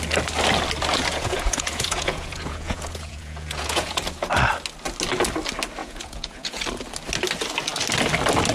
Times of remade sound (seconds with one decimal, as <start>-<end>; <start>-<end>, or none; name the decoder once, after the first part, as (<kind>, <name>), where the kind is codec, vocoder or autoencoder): 1.1-4.0 (vocoder, Vocos); 5.8-6.6